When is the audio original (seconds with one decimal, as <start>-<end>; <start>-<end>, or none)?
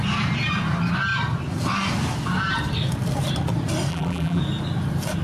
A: 0.0-3.9; 4.4-5.2